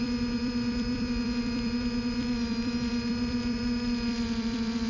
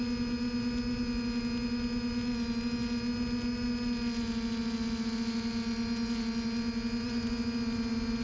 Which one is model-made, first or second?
first